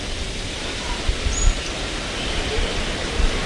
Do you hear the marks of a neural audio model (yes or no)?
no